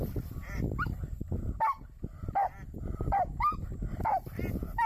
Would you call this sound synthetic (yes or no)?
no